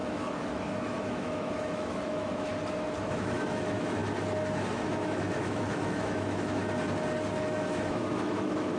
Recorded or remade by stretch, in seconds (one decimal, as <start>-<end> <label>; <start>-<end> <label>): 0.0-2.5 remade; 2.5-3.1 recorded; 3.1-4.0 remade; 4.0-4.9 recorded; 4.9-6.6 remade; 6.6-7.3 recorded; 7.3-8.8 remade